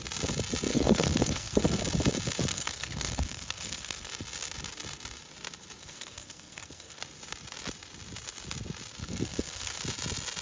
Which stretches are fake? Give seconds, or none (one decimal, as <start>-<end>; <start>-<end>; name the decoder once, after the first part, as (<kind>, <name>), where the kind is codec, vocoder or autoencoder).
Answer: 0.7-1.8 (codec, SNAC); 2.5-4.1; 5.8-7.0; 9.0-9.8